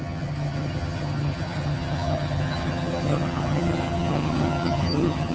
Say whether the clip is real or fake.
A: fake